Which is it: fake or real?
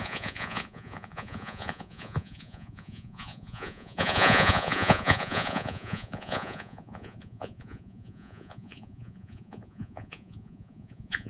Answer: fake